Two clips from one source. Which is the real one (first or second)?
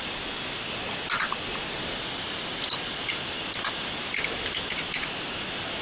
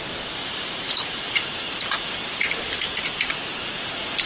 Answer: first